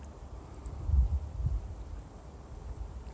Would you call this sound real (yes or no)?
yes